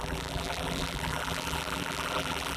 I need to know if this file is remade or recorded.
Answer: remade